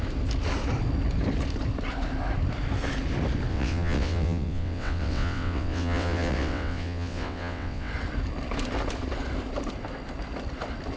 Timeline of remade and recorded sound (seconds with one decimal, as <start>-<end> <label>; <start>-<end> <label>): 0.0-3.5 recorded; 3.5-7.9 remade; 7.9-11.0 recorded